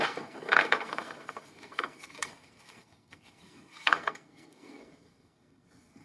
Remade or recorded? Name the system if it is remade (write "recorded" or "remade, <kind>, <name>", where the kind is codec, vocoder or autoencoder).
remade, codec, SNAC